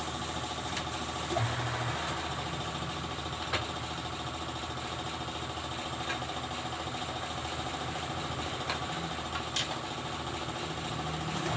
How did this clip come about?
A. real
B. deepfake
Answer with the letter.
A